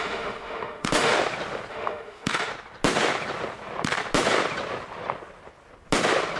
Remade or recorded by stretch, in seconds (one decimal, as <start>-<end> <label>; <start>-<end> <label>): 0.0-1.1 remade; 1.1-1.7 recorded; 1.7-2.5 remade; 2.5-6.4 recorded